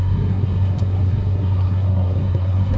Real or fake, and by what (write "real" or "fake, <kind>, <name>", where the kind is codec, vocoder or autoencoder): fake, codec, SNAC